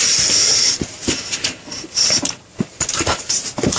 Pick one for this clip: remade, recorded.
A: remade